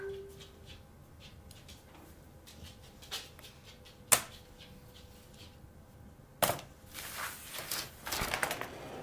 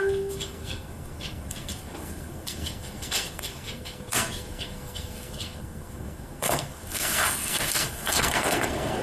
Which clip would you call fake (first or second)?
second